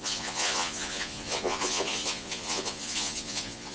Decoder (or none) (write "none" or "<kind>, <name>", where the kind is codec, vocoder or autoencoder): vocoder, Vocos